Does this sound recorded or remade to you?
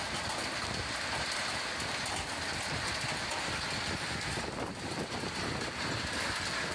recorded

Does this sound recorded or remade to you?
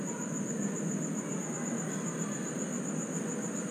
recorded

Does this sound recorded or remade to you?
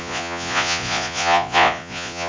remade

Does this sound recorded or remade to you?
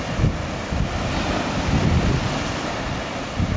recorded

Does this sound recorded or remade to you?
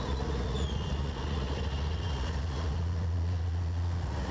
remade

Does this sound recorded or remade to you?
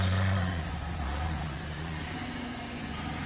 remade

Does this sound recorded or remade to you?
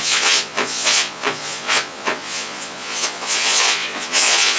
remade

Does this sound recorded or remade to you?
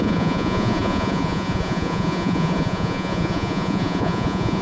remade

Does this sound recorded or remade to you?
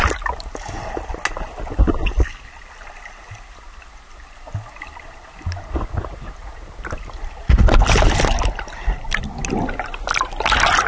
recorded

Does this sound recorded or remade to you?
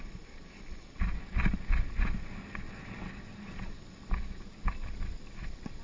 recorded